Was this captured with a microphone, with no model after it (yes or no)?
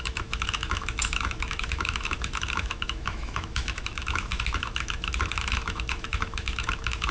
no